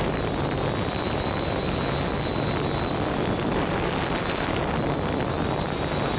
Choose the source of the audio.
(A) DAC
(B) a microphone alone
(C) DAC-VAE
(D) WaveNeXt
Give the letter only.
B